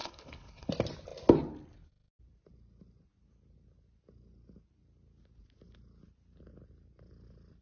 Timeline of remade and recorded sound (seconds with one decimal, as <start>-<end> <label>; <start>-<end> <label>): 0.0-0.7 remade; 0.7-7.6 recorded